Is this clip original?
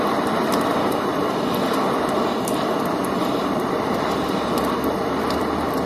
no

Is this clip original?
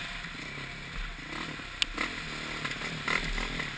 yes